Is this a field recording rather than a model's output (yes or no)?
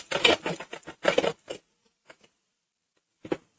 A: yes